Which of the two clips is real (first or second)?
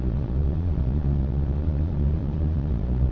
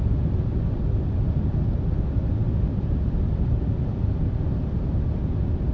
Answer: second